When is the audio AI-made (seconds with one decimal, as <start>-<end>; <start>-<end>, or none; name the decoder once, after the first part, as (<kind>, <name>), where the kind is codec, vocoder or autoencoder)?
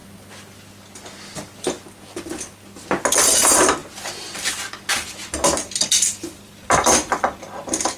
none